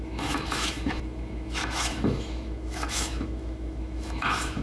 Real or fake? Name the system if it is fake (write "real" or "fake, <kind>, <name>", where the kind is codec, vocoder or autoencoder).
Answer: fake, autoencoder, DAC-VAE